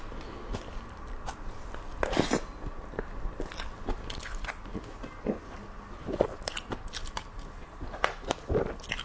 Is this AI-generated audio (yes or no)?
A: no